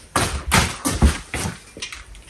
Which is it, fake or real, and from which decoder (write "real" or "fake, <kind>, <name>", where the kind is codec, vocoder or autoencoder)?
real